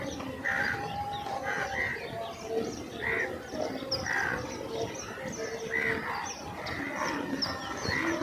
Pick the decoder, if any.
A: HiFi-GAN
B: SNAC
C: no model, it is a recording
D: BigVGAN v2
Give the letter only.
C